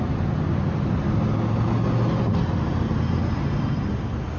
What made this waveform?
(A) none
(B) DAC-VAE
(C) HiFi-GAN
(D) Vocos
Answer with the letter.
A